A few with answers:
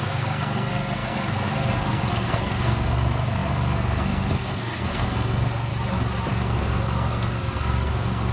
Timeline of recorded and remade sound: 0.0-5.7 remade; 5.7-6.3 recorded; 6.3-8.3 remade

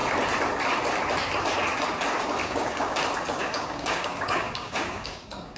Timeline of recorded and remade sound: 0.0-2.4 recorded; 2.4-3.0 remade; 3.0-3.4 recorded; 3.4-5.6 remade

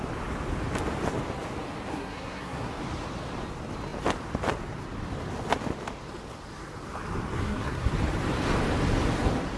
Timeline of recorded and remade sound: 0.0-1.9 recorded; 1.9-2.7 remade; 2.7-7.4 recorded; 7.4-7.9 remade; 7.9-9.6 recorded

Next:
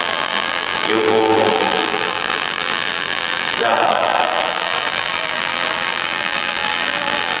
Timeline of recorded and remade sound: 0.0-7.4 remade